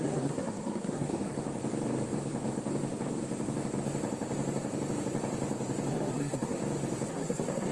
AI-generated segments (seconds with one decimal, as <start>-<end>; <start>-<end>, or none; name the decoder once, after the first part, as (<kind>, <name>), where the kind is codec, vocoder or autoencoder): 0.0-1.3 (codec, SNAC); 5.9-6.6; 7.1-7.7